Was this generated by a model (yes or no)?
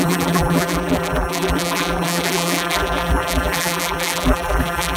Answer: yes